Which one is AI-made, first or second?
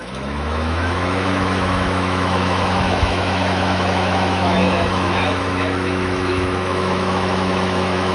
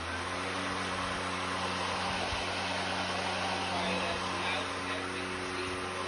first